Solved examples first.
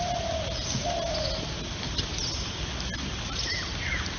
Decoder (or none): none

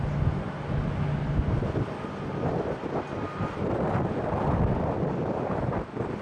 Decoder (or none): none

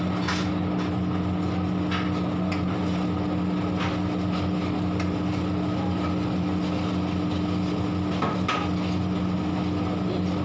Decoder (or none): none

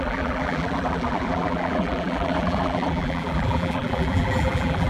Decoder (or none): vocoder, BigVGAN v2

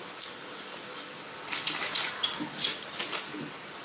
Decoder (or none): none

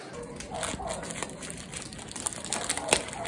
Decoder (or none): none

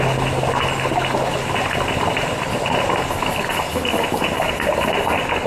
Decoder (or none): none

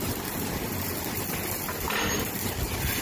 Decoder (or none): none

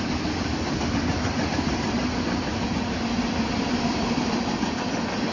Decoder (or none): none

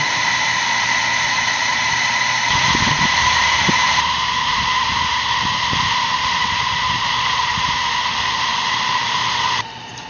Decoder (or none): vocoder, BigVGAN v2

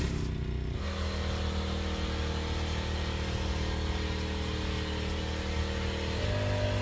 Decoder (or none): none